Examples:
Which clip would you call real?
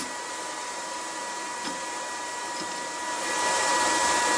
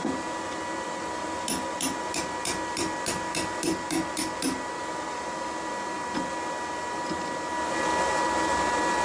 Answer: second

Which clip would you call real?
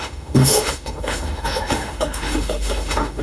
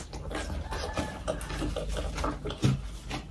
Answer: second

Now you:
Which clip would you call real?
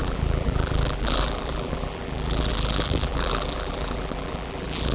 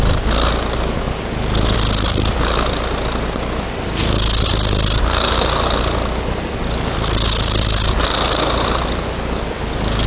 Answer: second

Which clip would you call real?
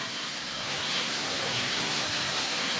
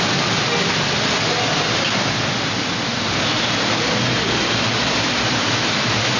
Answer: second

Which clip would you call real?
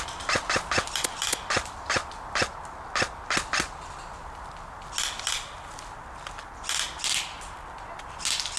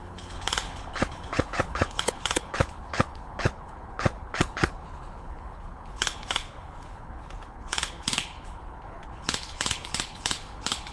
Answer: first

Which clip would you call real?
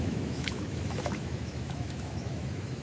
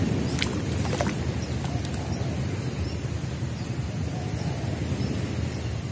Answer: second